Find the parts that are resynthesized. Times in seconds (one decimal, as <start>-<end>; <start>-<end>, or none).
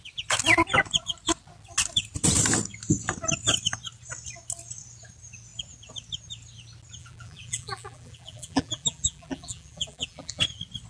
7.0-10.4